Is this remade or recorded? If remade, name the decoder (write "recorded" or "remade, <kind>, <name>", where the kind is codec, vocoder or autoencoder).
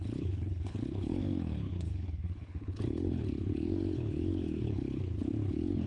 remade, codec, HILCodec